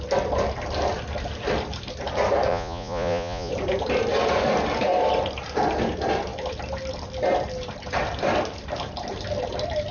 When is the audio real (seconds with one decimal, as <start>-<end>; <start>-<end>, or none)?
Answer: 0.0-2.5; 3.5-9.9